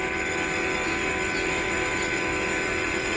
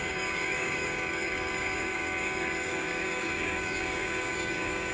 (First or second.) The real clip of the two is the first